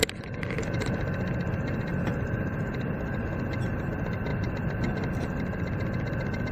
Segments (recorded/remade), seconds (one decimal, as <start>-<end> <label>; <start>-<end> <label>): 0.0-3.3 remade; 3.3-4.3 recorded; 4.3-5.4 remade; 5.4-6.5 recorded